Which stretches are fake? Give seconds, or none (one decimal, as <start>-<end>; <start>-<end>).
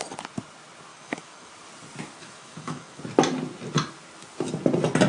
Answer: 0.9-1.5; 2.2-3.0